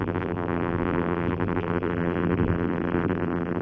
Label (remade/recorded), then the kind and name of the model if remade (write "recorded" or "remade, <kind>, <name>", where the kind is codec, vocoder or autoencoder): remade, vocoder, BigVGAN v2